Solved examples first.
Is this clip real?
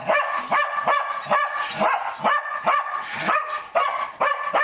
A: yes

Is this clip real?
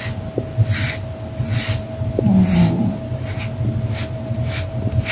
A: yes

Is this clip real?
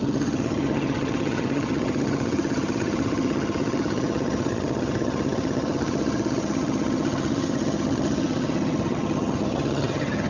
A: no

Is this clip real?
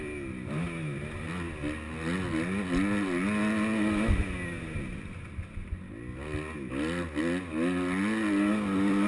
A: yes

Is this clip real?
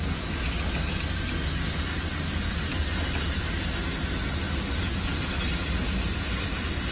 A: yes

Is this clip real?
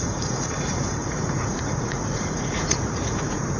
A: no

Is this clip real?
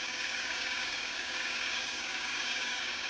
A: no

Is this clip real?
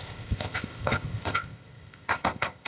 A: no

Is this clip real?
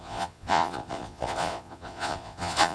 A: no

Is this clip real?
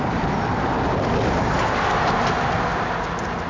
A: yes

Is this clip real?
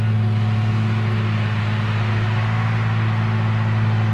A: yes